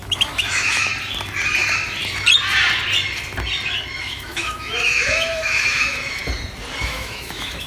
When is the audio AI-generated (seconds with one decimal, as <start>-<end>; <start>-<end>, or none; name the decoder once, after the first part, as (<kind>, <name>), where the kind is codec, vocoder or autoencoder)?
0.0-0.9 (autoencoder, DAC-VAE); 4.0-6.2; 6.8-7.7